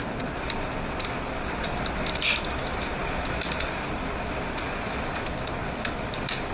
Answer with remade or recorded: recorded